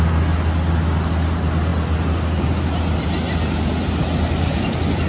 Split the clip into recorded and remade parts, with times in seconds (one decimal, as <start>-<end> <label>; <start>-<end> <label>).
0.0-5.1 recorded